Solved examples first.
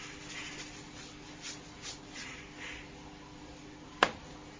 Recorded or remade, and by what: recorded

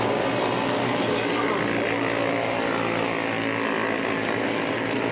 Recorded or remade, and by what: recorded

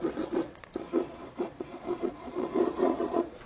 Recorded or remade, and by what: remade, vocoder, Vocos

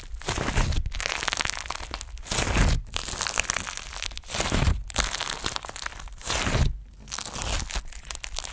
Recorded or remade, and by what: recorded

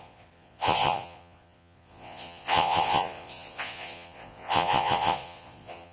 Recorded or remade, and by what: remade, vocoder, Vocos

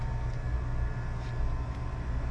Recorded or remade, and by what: recorded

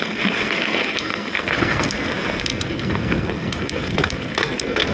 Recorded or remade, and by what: remade, codec, SNAC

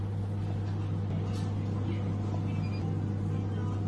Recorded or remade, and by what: recorded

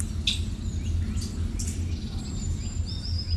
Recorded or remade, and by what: recorded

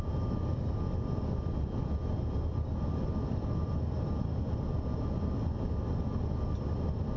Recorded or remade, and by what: recorded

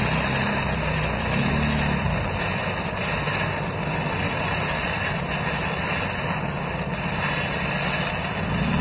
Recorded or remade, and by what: recorded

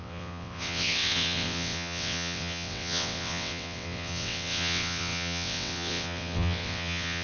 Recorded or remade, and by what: remade, vocoder, WaveNeXt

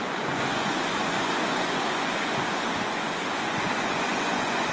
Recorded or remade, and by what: remade, vocoder, Vocos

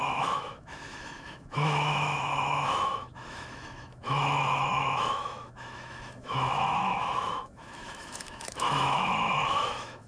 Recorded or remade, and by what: remade, autoencoder, DAC-VAE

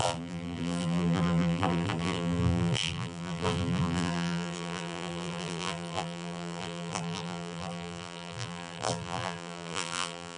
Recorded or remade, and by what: remade, vocoder, BigVGAN v2